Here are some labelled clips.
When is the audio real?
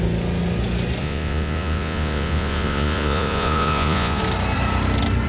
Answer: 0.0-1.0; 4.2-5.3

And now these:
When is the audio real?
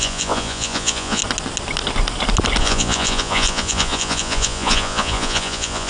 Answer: 1.2-2.6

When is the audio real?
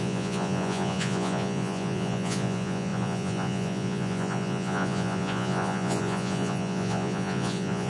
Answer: none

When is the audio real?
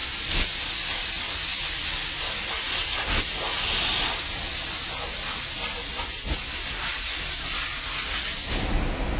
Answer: 0.0-9.2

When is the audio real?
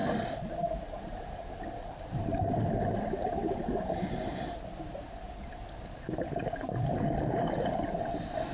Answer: 0.0-8.5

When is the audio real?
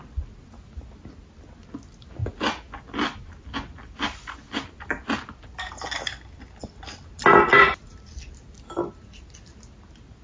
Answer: 0.0-10.2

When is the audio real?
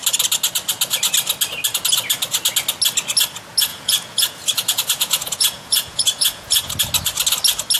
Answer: 0.0-3.7; 6.7-7.8